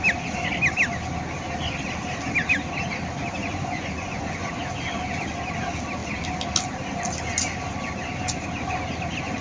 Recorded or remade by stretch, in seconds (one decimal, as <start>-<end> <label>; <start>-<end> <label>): 0.0-3.4 recorded; 3.4-4.5 remade; 4.5-9.4 recorded